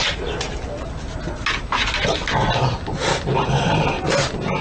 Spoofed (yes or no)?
no